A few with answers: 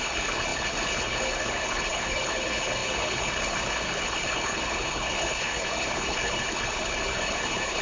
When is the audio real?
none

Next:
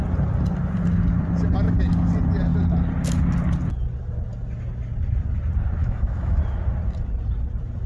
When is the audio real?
0.0-5.8; 6.4-7.9

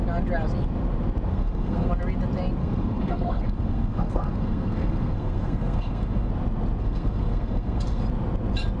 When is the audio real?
0.0-1.3; 1.9-2.6; 6.3-6.8; 8.0-8.8